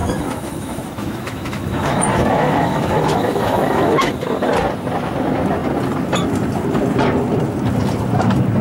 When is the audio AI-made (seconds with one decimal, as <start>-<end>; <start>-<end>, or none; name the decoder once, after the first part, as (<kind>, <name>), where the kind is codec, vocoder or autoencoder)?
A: 0.0-4.1 (autoencoder, DAC-VAE)